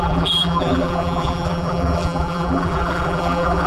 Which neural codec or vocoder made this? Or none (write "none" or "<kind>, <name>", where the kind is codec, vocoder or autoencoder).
vocoder, BigVGAN v2